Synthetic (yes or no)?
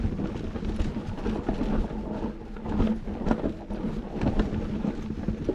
no